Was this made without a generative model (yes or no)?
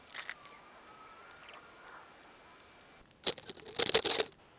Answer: yes